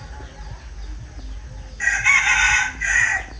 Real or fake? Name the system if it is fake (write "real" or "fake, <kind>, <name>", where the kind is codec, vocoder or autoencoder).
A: real